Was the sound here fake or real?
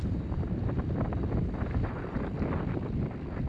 real